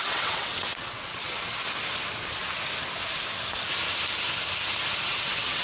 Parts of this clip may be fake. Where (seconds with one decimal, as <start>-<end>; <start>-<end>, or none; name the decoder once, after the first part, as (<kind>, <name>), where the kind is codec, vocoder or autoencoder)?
0.0-1.6 (vocoder, WaveNeXt); 5.0-5.6